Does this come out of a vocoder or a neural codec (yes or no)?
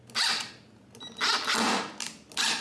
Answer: no